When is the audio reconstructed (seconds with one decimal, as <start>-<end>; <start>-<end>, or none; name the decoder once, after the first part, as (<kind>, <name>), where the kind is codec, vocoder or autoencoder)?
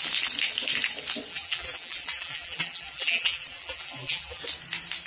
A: 1.3-4.4 (vocoder, BigVGAN v2)